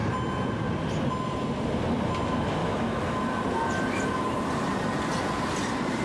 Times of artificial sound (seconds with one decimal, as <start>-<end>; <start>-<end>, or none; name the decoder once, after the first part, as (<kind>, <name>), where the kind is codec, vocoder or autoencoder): 2.6-3.2 (autoencoder, DAC-VAE)